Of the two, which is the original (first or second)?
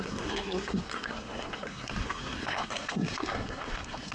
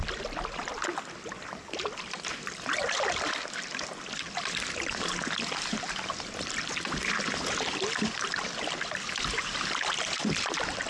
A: second